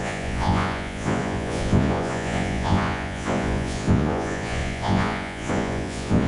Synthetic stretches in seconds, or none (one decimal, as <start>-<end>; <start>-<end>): 0.0-6.3